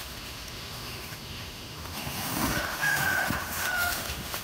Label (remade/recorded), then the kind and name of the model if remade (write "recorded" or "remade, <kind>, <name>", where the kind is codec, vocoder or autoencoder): remade, autoencoder, DAC-VAE